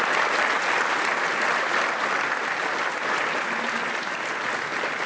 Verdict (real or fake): real